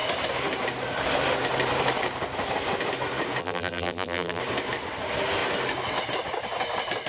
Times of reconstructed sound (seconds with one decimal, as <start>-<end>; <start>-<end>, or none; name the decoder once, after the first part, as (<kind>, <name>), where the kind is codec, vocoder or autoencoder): 3.4-4.4 (vocoder, BigVGAN v2)